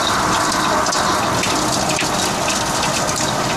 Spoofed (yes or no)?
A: no